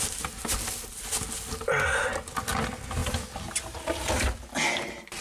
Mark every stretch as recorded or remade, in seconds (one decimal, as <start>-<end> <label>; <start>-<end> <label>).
0.0-5.2 recorded